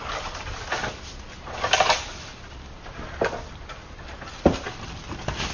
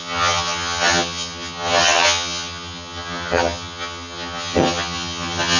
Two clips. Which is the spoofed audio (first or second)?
second